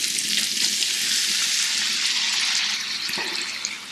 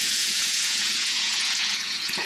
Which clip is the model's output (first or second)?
second